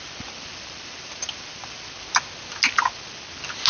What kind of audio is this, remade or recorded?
recorded